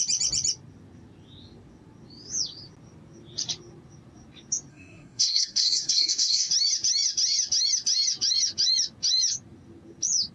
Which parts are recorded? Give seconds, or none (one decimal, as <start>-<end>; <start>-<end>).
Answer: 0.0-4.7; 6.5-10.3